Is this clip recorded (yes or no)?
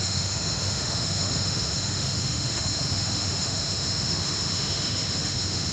no